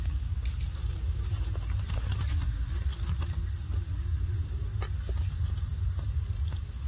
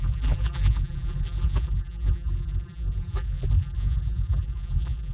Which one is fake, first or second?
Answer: second